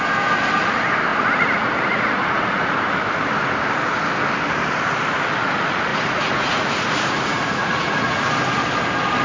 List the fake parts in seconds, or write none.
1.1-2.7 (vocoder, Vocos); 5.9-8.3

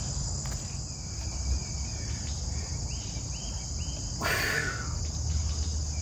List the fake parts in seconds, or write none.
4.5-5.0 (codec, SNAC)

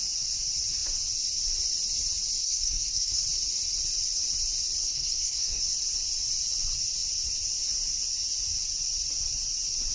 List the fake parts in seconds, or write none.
2.4-3.2 (codec, SNAC); 4.8-5.6

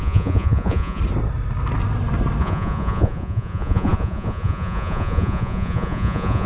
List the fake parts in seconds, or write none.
0.0-1.0 (vocoder, Vocos); 2.4-6.5

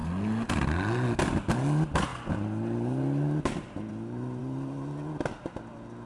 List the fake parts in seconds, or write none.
none

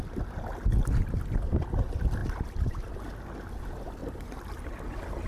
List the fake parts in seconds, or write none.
2.2-3.0 (vocoder, BigVGAN v2); 4.0-4.7

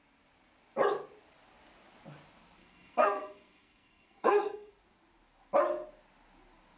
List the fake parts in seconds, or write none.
2.6-4.7 (codec, SNAC)